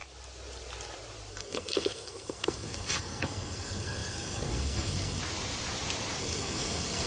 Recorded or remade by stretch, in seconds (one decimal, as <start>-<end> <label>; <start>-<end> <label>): 0.0-1.3 recorded; 1.3-5.2 remade; 5.2-6.2 recorded; 6.2-7.1 remade